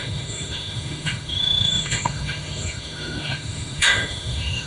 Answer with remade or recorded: remade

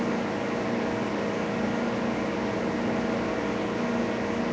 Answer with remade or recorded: recorded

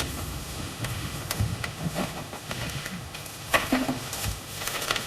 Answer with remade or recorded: remade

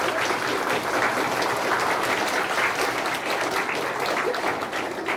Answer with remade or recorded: recorded